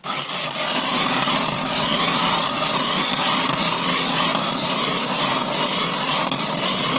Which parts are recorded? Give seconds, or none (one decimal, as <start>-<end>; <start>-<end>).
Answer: 0.0-7.0